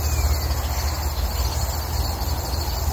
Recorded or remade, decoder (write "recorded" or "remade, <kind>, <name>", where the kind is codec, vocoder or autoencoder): recorded